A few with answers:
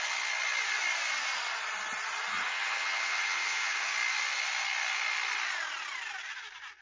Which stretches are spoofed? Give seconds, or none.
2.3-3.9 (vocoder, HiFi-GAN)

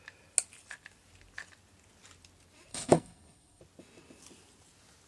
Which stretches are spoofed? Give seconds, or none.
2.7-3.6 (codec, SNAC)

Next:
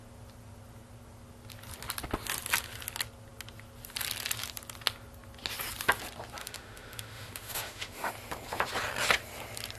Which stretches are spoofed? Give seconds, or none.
6.4-8.1 (autoencoder, DAC-VAE)